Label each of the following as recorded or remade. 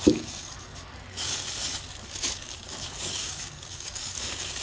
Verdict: remade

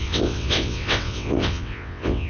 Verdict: remade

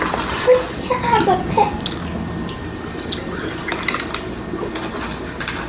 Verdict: recorded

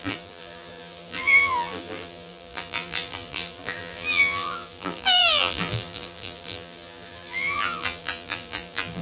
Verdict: remade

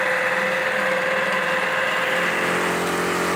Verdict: recorded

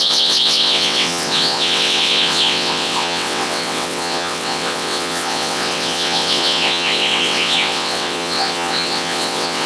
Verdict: remade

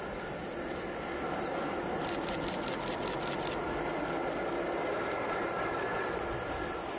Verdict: recorded